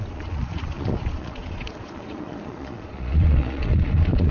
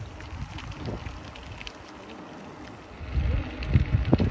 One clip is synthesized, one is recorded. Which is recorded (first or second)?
second